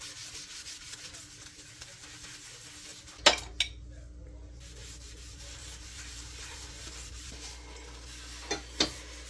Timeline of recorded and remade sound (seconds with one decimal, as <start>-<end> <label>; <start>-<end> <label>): 0.0-4.8 recorded; 4.8-7.5 remade; 7.5-9.3 recorded